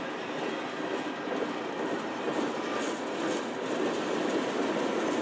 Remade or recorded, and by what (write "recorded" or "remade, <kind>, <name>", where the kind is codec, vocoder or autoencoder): recorded